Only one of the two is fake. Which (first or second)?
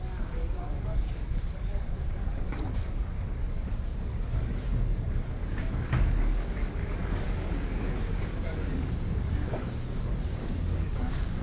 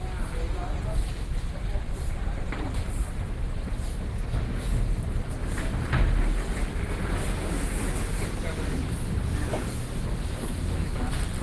first